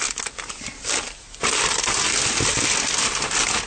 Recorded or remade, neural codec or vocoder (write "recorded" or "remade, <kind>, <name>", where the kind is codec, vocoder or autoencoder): recorded